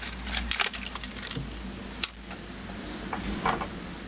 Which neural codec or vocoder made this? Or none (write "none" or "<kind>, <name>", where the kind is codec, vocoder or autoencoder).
none